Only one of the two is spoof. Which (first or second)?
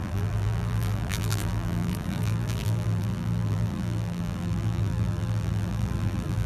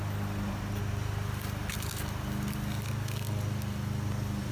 first